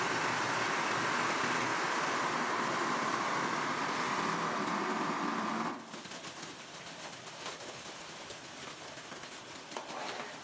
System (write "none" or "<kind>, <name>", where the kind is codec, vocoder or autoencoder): none